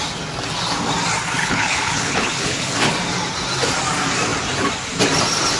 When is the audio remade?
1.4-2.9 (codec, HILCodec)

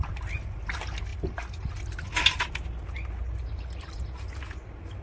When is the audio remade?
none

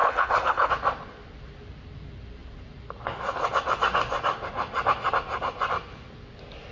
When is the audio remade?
0.0-0.7 (codec, HILCodec)

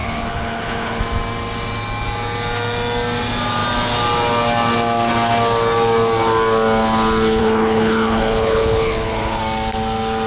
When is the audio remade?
0.0-1.0 (codec, HILCodec); 7.4-9.4

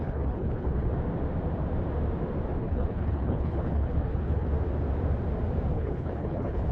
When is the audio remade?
0.0-0.9 (codec, HILCodec); 2.6-4.5; 5.7-6.7

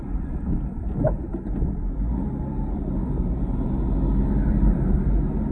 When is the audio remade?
none

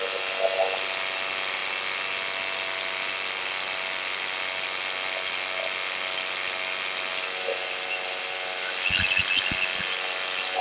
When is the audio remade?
none